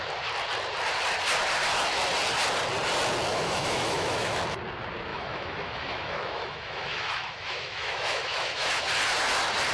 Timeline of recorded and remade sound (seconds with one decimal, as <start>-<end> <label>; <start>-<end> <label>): 0.0-3.3 recorded; 3.3-4.4 remade; 4.4-5.1 recorded; 5.1-8.8 remade; 8.8-9.7 recorded

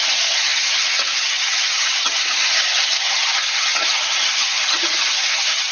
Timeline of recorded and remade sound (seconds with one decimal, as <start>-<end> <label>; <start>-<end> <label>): 0.0-5.7 remade

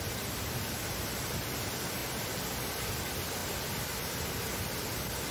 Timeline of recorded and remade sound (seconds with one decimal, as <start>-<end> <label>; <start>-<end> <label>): 0.0-5.3 recorded

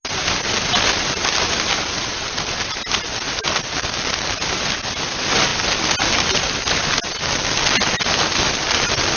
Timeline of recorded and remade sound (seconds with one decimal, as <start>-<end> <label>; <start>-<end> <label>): 0.0-9.2 recorded

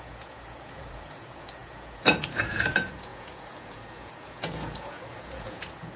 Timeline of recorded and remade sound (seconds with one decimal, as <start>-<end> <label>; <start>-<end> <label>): 0.0-6.0 remade

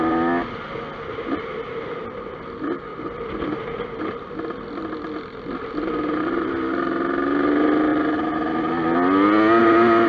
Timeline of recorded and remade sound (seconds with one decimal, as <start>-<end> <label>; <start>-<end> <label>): 0.0-2.9 recorded; 2.9-4.1 remade; 4.1-10.1 recorded

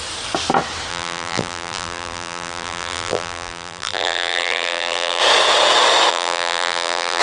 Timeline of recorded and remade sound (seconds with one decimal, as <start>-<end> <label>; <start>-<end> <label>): 0.0-0.9 recorded; 0.9-5.2 remade; 5.2-6.1 recorded; 6.1-7.2 remade

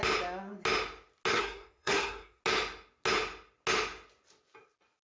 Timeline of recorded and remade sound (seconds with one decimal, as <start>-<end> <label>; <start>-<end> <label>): 0.0-1.3 recorded; 1.3-2.4 remade; 2.4-5.0 recorded